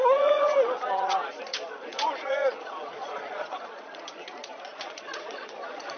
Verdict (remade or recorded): remade